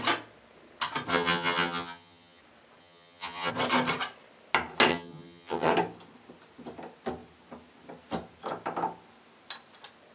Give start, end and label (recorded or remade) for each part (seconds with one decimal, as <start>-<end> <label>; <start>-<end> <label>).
0.0-1.1 recorded; 1.1-2.4 remade; 2.4-2.8 recorded; 2.8-3.5 remade; 3.5-4.9 recorded; 4.9-5.7 remade; 5.7-10.1 recorded